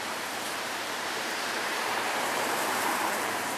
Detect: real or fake fake